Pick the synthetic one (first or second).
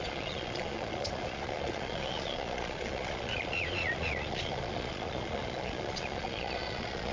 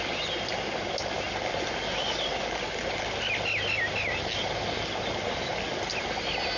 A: first